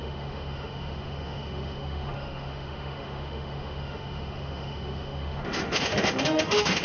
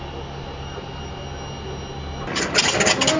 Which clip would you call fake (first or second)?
first